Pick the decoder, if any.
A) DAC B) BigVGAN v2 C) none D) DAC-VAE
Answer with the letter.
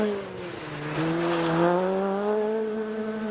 C